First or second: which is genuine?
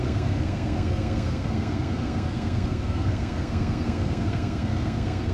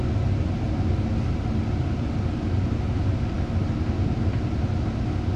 second